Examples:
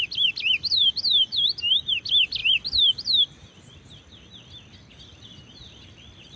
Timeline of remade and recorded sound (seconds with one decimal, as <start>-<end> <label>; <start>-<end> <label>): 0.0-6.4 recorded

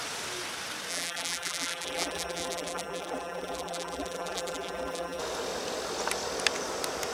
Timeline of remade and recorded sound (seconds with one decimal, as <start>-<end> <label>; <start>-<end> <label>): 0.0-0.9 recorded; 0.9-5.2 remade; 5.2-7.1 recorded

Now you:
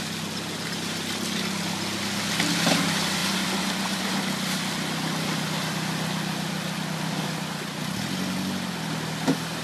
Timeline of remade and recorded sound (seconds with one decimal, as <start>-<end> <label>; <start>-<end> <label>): 0.0-9.6 recorded

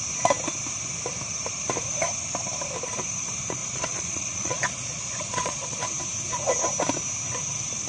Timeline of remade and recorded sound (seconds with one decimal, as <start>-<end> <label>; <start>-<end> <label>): 0.0-3.6 recorded; 3.6-5.8 remade; 5.8-7.9 recorded